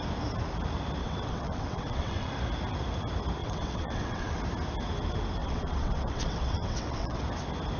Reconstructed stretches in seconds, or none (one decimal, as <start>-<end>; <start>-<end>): 1.0-2.3; 3.4-4.4; 5.4-7.2